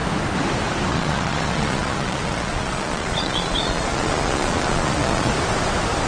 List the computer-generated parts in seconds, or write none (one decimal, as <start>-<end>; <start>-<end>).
0.9-5.3